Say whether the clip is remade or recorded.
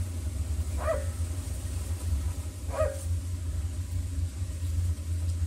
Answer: recorded